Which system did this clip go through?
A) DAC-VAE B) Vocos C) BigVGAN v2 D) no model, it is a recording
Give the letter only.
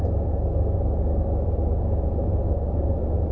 D